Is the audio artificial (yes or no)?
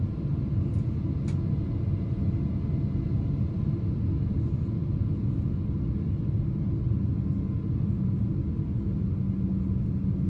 no